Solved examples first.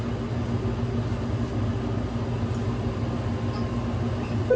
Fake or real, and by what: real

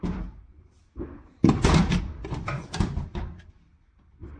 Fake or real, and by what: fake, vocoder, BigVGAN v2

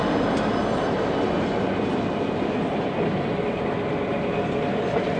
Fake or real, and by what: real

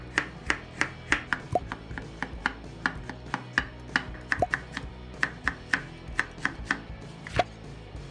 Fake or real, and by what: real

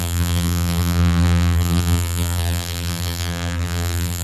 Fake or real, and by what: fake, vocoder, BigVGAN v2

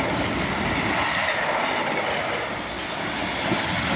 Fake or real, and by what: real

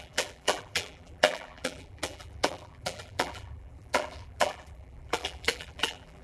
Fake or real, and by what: fake, vocoder, BigVGAN v2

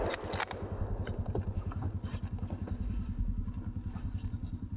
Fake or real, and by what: real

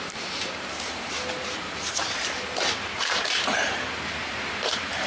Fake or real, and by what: fake, vocoder, BigVGAN v2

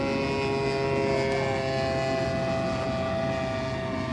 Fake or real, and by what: real